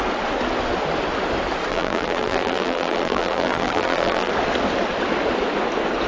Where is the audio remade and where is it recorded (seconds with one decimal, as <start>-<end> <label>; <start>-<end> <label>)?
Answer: 0.0-1.7 recorded; 1.7-4.3 remade; 4.3-6.1 recorded